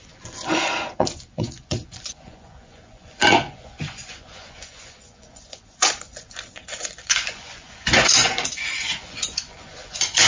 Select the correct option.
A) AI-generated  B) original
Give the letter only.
A